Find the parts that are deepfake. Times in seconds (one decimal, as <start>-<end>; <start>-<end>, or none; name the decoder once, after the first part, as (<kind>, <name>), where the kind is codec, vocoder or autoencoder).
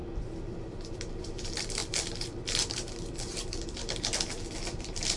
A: 0.0-1.1 (vocoder, BigVGAN v2); 1.8-5.2